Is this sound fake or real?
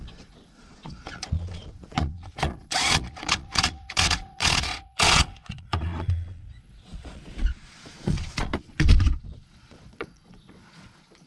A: fake